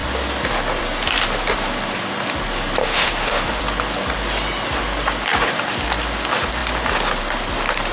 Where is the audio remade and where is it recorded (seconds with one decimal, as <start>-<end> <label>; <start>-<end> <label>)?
0.0-2.8 recorded; 2.8-3.6 remade; 3.6-7.9 recorded